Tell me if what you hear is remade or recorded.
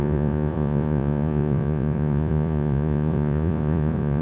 remade